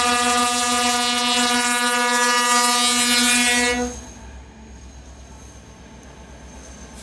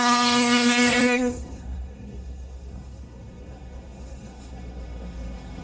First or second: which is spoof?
second